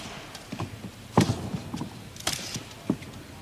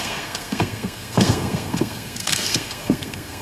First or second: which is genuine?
first